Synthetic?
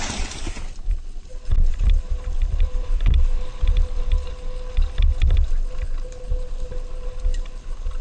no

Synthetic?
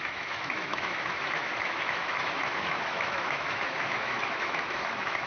yes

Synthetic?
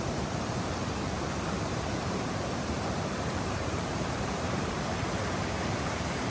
yes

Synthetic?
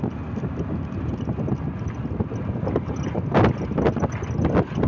no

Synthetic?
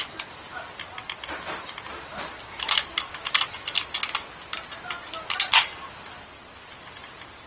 no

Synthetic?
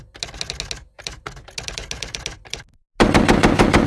no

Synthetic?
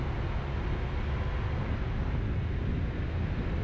no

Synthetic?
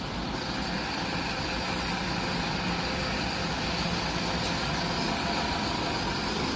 no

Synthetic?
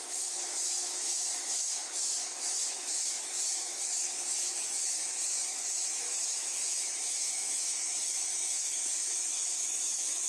yes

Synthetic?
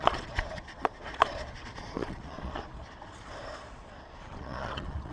yes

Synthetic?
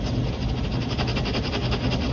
no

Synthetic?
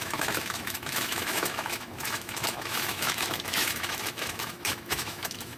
yes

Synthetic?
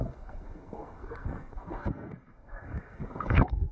yes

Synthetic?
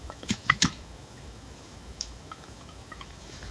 yes